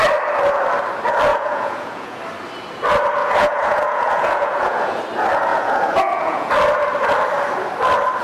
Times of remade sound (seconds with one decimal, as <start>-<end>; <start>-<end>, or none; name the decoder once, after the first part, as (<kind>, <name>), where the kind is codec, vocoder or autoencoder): 1.3-2.2 (vocoder, Vocos); 3.2-5.0; 5.5-6.5